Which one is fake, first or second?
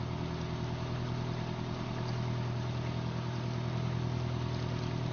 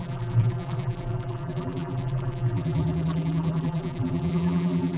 second